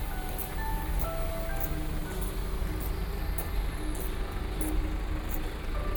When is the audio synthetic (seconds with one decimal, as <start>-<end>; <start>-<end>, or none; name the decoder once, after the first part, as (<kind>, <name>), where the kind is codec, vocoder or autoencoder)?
none